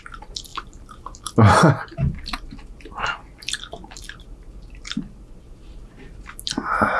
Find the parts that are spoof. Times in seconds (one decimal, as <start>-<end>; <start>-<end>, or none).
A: 0.5-1.6